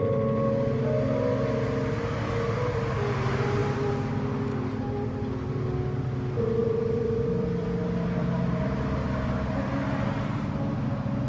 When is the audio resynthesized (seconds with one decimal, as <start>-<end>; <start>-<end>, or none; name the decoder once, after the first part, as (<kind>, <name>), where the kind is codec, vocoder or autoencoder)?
3.6-4.1 (vocoder, BigVGAN v2); 6.6-8.2